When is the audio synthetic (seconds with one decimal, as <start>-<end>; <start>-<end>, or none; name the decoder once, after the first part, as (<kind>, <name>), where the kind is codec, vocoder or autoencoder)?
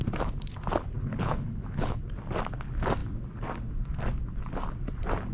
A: 1.0-2.0 (codec, HILCodec)